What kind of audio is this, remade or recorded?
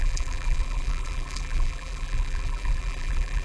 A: remade